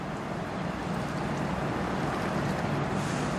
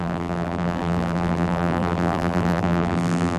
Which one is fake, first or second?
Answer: second